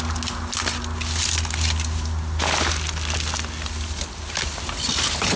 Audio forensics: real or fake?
real